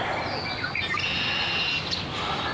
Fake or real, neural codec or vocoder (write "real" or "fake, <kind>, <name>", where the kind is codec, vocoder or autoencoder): real